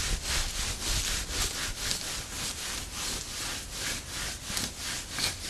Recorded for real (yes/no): yes